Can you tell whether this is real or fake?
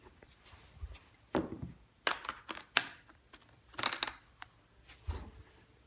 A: real